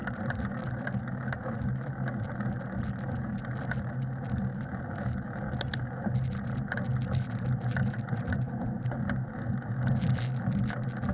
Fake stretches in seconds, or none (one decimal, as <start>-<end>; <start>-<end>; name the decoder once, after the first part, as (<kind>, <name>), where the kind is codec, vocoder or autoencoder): none